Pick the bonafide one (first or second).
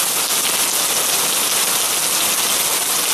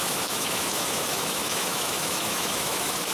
first